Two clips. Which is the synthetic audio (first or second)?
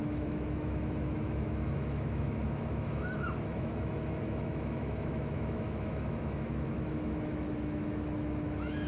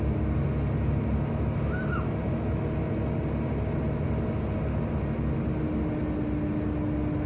first